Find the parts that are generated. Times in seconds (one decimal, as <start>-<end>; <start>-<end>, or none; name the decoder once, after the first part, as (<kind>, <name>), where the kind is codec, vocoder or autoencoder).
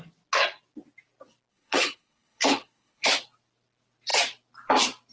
1.5-3.1 (codec, HILCodec)